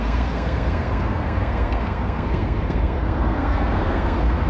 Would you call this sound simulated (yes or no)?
yes